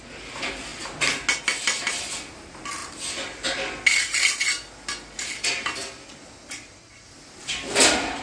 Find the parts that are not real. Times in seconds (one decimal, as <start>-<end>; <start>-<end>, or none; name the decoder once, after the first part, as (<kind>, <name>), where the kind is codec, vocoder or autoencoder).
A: none